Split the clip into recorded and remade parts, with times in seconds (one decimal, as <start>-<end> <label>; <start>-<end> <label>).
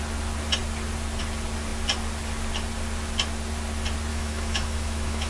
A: 0.0-4.1 recorded; 4.1-5.3 remade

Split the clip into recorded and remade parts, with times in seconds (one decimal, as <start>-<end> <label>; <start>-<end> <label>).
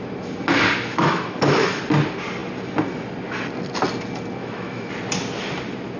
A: 0.0-0.9 recorded; 0.9-1.8 remade; 1.8-4.4 recorded; 4.4-4.9 remade; 4.9-6.0 recorded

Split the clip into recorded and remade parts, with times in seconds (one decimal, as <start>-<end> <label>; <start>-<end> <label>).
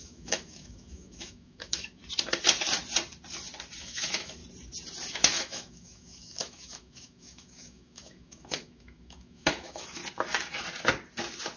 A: 0.0-2.0 remade; 2.0-3.8 recorded; 3.8-4.4 remade; 4.4-5.1 recorded; 5.1-10.0 remade; 10.0-11.6 recorded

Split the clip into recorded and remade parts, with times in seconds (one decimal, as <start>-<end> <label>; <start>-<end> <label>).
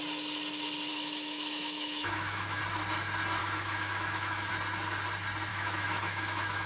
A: 0.0-0.9 recorded; 0.9-2.6 remade; 2.6-3.4 recorded; 3.4-4.5 remade; 4.5-5.5 recorded; 5.5-6.7 remade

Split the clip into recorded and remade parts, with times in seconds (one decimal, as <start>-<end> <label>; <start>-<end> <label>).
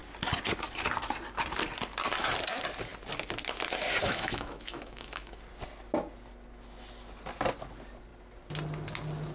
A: 0.0-4.0 recorded; 4.0-5.4 remade; 5.4-9.3 recorded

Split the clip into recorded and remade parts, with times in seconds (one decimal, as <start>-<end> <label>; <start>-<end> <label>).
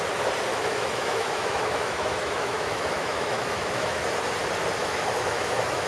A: 0.0-0.5 recorded; 0.5-4.0 remade; 4.0-4.8 recorded; 4.8-5.9 remade